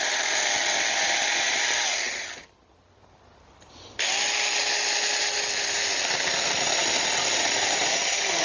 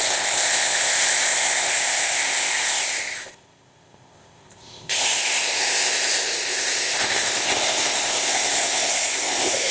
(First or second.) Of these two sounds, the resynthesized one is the second